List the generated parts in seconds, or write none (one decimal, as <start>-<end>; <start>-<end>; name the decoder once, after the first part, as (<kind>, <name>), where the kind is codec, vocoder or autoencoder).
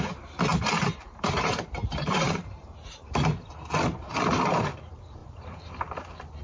0.5-3.5 (vocoder, BigVGAN v2); 5.2-5.7